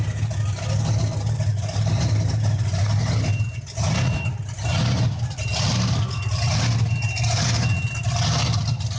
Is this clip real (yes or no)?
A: yes